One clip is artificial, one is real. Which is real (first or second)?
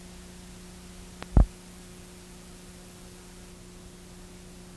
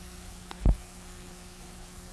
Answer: first